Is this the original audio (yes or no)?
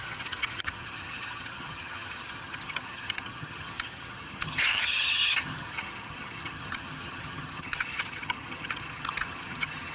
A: no